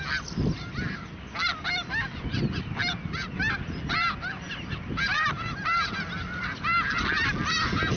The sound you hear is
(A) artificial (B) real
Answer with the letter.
B